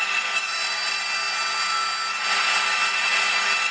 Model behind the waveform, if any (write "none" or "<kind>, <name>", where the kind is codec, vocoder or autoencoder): none